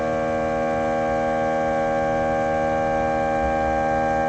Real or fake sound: real